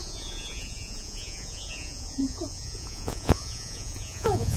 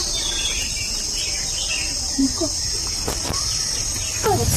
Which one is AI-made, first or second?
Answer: first